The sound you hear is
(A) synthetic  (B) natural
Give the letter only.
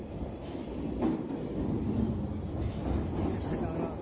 B